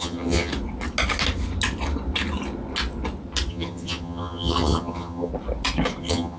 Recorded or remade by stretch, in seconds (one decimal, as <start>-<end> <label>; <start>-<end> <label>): 0.0-0.5 remade; 0.5-3.5 recorded; 3.5-5.3 remade; 5.3-6.0 recorded; 6.0-6.4 remade